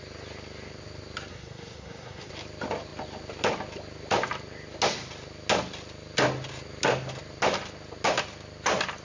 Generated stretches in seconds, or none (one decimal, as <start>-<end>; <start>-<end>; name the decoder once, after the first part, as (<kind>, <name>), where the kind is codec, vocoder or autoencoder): 1.3-2.3 (codec, SNAC)